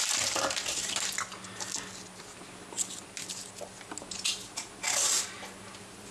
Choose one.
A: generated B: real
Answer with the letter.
B